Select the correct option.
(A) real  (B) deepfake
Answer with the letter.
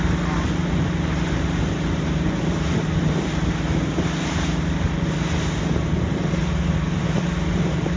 A